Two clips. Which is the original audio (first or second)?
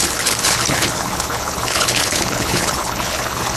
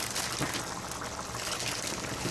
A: second